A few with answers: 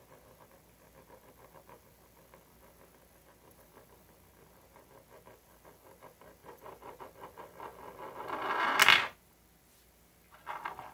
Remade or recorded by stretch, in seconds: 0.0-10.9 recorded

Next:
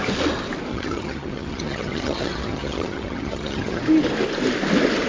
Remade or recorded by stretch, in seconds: 0.0-0.7 recorded; 0.7-3.8 remade; 3.8-5.1 recorded

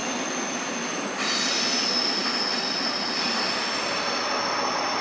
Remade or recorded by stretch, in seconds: 0.0-5.0 recorded